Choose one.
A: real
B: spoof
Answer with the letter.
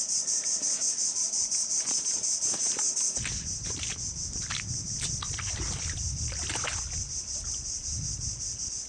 A